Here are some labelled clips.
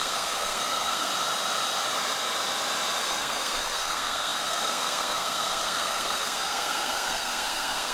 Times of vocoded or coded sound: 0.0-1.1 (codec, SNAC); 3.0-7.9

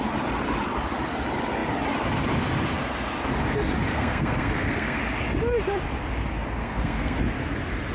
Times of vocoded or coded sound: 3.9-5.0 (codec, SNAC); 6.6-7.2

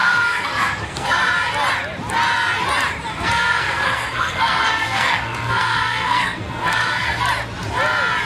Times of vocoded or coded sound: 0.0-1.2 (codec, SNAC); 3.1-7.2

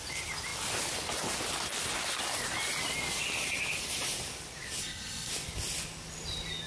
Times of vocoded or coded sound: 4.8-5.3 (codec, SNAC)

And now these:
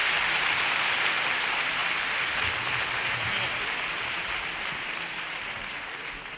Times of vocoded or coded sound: none

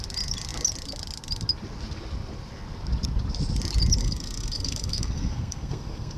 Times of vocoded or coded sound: 4.0-6.2 (codec, SNAC)